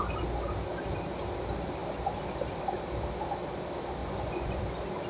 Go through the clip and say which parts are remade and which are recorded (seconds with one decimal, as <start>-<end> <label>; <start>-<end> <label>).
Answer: 0.0-4.0 recorded; 4.0-4.6 remade; 4.6-5.1 recorded